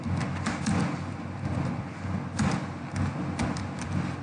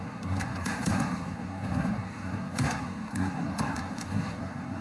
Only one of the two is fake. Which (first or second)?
second